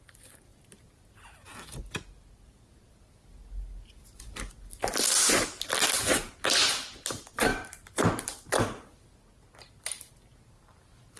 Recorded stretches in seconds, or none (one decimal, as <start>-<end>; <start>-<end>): 0.0-11.2